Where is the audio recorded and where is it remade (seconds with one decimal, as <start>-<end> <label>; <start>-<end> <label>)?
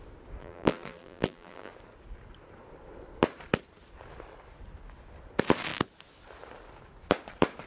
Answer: 0.0-0.4 recorded; 0.4-1.7 remade; 1.7-7.7 recorded